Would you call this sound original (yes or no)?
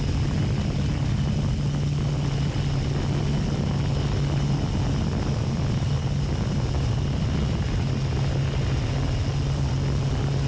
yes